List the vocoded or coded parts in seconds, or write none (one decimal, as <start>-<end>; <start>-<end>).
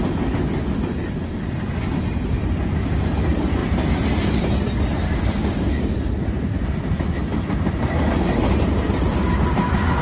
none